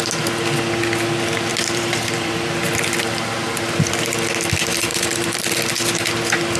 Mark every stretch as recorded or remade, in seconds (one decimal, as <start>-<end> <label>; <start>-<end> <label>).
0.0-1.5 recorded; 1.5-3.5 remade; 3.5-4.9 recorded; 4.9-5.7 remade; 5.7-6.6 recorded